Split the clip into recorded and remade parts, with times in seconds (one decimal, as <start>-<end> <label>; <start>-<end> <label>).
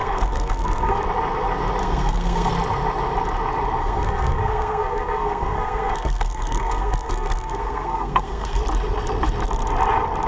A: 0.0-1.0 remade; 1.0-1.8 recorded; 1.8-2.5 remade; 2.5-3.8 recorded; 3.8-8.6 remade; 8.6-10.3 recorded